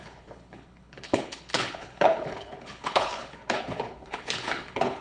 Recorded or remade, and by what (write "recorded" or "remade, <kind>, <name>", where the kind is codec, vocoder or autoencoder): remade, codec, HILCodec